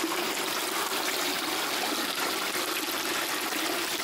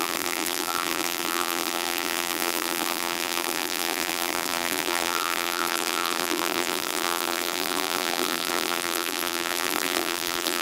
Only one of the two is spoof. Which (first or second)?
second